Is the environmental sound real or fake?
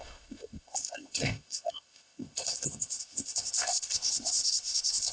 fake